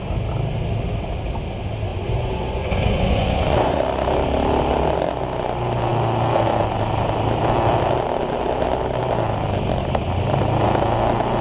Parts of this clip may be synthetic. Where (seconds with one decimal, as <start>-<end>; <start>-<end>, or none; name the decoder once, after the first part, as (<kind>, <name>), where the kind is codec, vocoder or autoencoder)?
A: 1.9-3.8 (vocoder, Vocos)

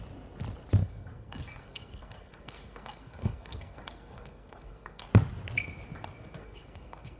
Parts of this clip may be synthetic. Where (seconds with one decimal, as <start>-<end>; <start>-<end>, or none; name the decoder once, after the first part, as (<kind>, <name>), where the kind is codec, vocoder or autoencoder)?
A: 0.8-5.1 (codec, SNAC); 6.4-7.2

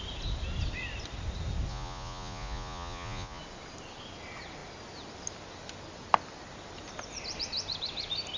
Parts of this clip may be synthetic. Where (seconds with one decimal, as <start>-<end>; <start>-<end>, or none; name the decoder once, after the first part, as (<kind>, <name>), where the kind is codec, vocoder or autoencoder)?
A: 1.7-3.4 (vocoder, Vocos)